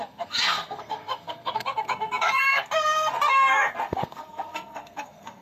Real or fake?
fake